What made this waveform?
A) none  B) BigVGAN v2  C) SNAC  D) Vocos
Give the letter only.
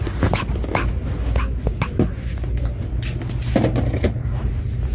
A